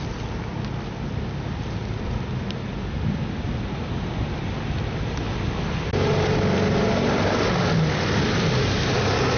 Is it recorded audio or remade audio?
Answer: recorded